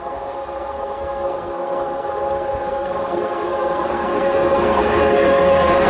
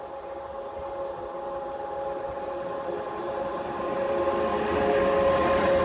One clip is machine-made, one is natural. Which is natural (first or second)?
second